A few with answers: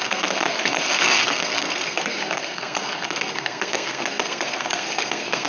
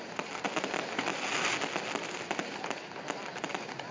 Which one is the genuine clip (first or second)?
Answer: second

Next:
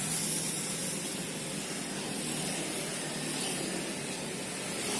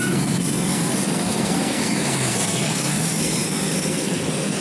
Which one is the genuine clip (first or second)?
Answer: first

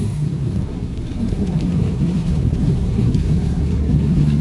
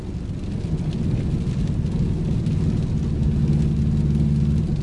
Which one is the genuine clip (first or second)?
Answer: second